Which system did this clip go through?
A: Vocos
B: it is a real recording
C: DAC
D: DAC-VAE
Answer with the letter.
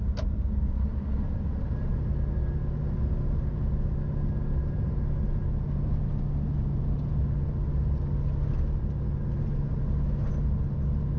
B